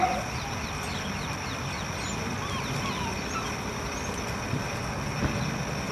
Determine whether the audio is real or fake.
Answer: real